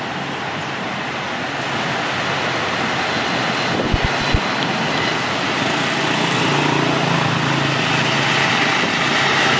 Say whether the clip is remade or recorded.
recorded